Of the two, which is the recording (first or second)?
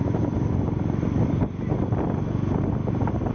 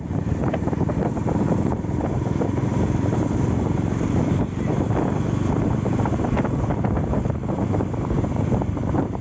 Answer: first